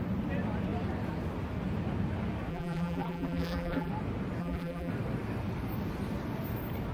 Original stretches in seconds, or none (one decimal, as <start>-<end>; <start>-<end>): 0.0-2.5; 3.9-4.4; 4.9-6.9